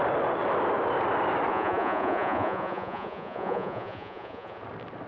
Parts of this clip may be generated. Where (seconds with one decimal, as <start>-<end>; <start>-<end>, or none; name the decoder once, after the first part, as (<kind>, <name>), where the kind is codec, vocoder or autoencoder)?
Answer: 1.5-4.6 (vocoder, Vocos)